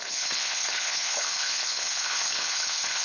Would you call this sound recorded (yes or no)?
no